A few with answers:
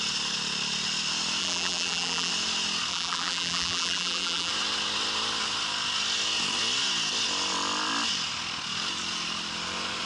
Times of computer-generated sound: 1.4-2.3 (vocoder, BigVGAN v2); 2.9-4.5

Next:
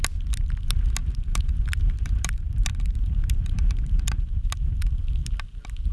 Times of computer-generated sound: 1.0-4.5 (vocoder, BigVGAN v2)

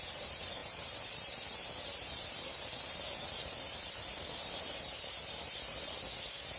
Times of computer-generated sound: 0.0-6.6 (vocoder, BigVGAN v2)